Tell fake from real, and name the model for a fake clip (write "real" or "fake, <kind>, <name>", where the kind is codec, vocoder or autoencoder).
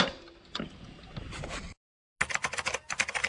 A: real